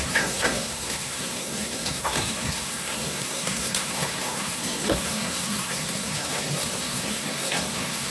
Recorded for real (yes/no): no